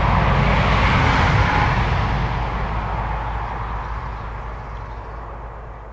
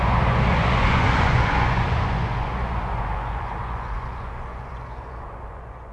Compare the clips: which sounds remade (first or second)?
second